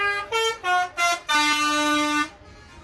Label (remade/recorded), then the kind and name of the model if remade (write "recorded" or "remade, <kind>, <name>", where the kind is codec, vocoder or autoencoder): recorded